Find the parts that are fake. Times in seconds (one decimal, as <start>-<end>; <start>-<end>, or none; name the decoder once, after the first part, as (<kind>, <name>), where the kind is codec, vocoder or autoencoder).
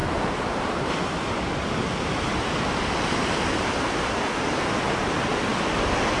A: 0.0-1.1 (vocoder, BigVGAN v2)